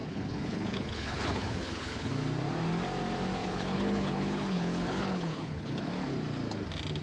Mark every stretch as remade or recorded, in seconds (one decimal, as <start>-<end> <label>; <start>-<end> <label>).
0.0-2.1 remade; 2.1-3.4 recorded; 3.4-5.9 remade; 5.9-7.0 recorded